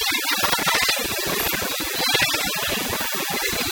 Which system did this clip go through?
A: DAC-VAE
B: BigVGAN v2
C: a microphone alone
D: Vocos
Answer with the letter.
C